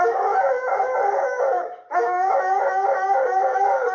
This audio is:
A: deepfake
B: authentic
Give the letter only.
A